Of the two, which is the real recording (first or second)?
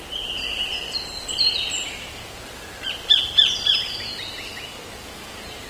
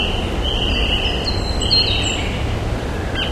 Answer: second